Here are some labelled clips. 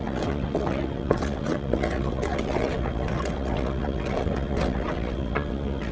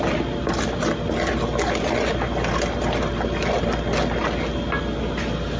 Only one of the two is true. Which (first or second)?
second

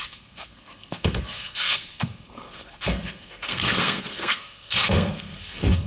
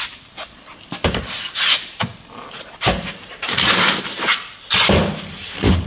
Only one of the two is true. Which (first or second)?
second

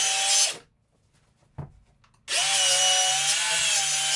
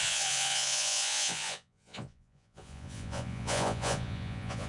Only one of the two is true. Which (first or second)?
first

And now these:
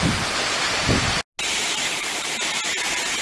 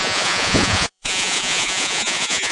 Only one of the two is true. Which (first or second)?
first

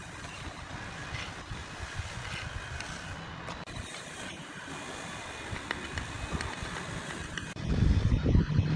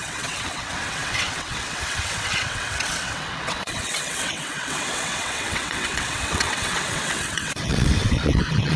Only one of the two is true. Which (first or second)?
first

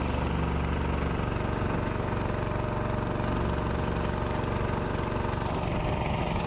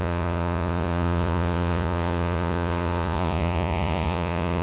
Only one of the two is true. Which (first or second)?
first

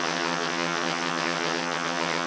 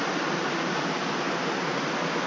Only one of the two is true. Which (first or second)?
second